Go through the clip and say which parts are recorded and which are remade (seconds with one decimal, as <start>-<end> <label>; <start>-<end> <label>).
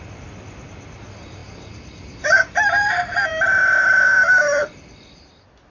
0.0-5.7 remade